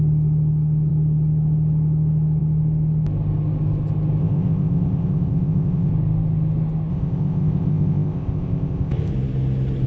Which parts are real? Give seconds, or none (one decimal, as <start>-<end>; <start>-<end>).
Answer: 0.0-4.2; 5.9-6.9; 9.1-9.9